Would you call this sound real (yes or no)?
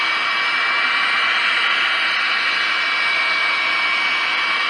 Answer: yes